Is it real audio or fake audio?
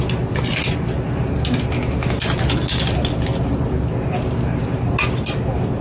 real